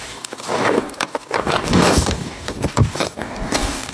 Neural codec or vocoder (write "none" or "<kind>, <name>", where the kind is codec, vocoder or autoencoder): codec, DAC